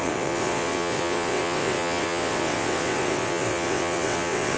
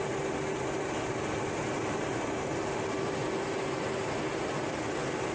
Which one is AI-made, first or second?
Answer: first